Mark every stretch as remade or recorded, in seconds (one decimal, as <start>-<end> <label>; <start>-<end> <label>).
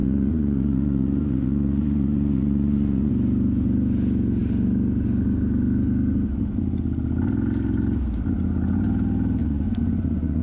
0.0-3.1 remade; 3.1-9.4 recorded; 9.4-10.4 remade